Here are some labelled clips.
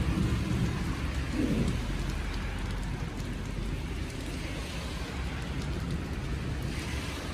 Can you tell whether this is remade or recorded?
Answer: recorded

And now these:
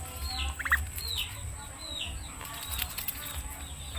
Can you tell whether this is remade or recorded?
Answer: recorded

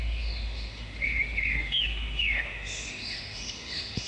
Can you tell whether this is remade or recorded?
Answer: remade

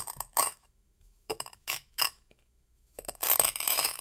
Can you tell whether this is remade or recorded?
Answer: remade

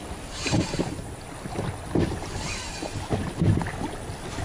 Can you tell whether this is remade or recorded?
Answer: recorded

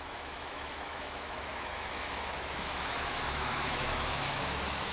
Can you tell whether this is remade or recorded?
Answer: remade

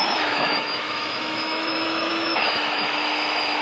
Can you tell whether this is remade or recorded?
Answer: remade